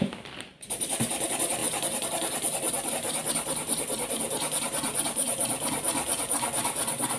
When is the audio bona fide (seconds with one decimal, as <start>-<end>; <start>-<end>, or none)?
0.0-7.2